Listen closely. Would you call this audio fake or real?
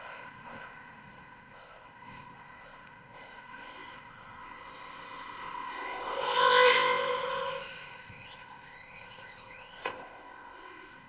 fake